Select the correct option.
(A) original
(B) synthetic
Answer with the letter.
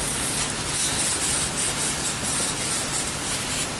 A